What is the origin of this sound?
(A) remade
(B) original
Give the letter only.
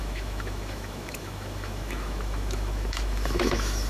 A